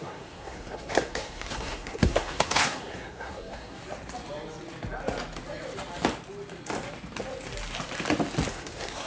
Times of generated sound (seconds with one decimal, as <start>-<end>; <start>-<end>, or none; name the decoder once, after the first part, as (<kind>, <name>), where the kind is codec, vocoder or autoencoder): 0.0-3.8 (codec, SNAC); 8.5-9.1